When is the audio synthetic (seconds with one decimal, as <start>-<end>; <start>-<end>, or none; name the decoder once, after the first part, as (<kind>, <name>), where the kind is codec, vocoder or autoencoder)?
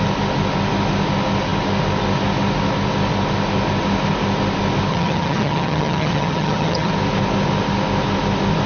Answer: 4.9-6.9 (vocoder, HiFi-GAN)